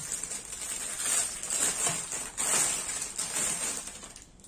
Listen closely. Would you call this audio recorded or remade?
recorded